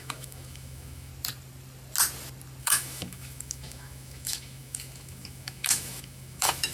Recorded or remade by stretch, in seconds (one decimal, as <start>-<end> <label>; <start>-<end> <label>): 0.0-1.1 remade; 1.1-2.6 recorded; 2.6-6.7 remade